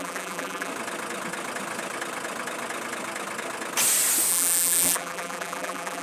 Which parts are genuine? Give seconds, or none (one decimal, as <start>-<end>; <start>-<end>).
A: 0.7-4.3